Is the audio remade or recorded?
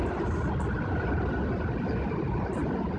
recorded